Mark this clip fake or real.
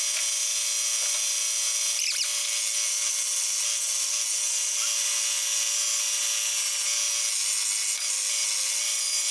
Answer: real